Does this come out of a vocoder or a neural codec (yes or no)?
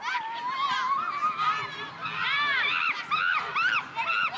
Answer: no